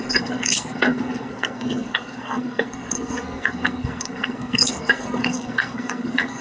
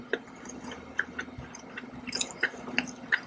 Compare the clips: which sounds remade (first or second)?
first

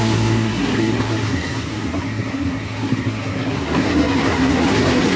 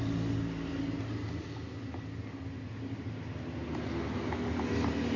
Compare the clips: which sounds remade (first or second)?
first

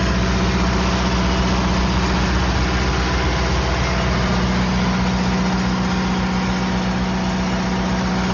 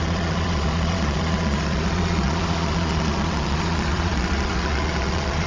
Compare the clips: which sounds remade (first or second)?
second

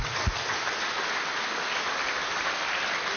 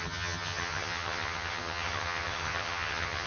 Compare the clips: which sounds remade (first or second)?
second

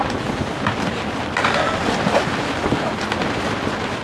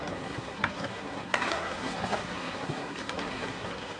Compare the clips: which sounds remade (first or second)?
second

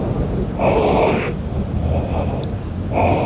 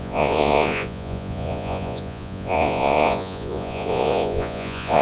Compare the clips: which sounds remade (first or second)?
second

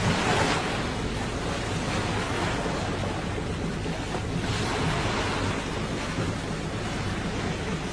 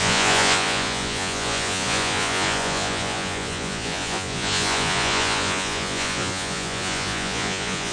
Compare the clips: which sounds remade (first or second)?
second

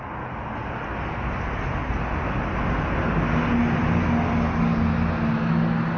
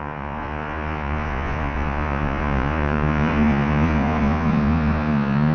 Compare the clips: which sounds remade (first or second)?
second